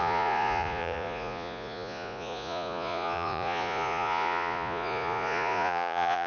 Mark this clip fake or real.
fake